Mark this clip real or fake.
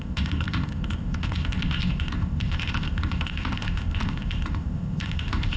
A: fake